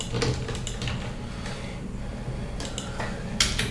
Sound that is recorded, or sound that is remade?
recorded